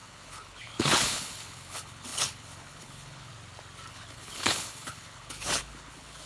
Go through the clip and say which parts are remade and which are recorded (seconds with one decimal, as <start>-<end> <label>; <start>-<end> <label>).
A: 0.0-3.3 remade; 3.3-3.9 recorded; 3.9-6.3 remade